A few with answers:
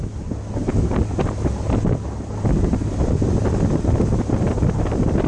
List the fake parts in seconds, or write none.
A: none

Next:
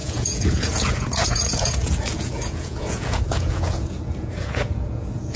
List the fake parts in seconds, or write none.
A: 0.0-5.4 (vocoder, Vocos)